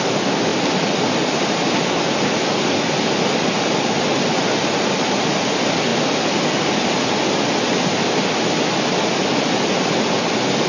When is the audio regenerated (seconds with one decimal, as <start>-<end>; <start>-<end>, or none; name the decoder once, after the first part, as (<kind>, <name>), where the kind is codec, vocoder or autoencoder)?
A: none